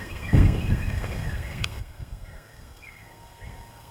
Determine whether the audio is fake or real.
fake